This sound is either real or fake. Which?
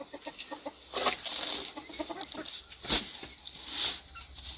real